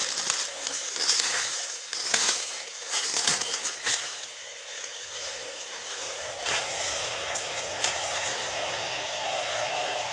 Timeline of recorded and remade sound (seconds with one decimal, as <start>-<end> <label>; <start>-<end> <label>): 0.0-0.5 recorded; 0.5-10.1 remade